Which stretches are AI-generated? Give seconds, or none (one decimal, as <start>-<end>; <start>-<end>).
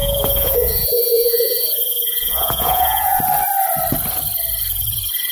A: 0.0-3.2